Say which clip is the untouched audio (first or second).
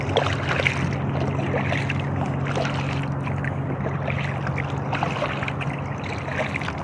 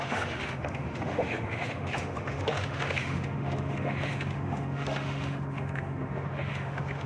first